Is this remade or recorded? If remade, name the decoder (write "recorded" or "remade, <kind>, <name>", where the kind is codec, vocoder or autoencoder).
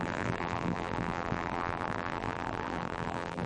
remade, vocoder, BigVGAN v2